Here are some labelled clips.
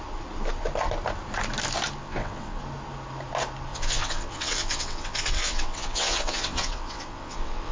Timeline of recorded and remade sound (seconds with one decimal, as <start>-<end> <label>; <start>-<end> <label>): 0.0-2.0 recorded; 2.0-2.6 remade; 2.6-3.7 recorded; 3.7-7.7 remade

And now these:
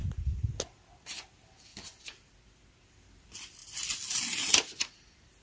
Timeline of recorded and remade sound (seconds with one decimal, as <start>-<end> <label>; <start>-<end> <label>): 0.0-0.5 remade; 0.5-1.7 recorded; 1.7-2.3 remade; 2.3-5.4 recorded

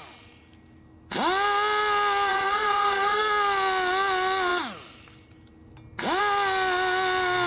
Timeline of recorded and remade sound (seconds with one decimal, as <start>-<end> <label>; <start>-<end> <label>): 0.0-2.3 recorded; 2.3-3.2 remade; 3.2-7.5 recorded

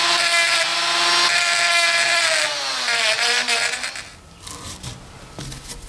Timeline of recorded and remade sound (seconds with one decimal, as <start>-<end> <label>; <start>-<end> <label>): 0.0-5.9 recorded